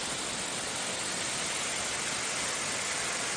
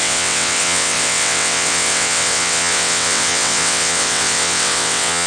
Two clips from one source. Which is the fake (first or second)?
second